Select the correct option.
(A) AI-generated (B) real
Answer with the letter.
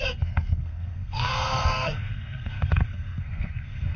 A